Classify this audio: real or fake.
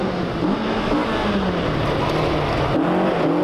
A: real